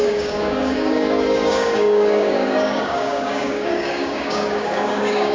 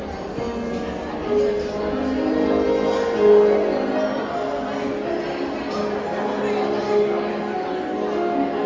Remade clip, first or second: first